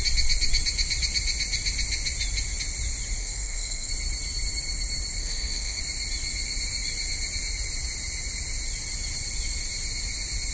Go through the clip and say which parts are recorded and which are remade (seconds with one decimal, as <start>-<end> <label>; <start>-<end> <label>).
0.0-3.2 recorded; 3.2-3.9 remade; 3.9-5.2 recorded; 5.2-5.8 remade; 5.8-10.5 recorded